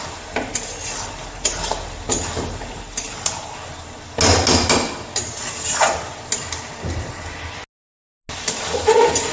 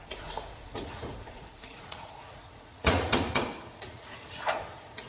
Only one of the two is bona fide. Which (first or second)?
first